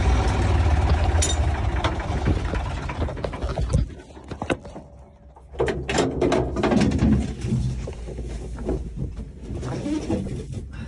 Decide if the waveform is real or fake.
real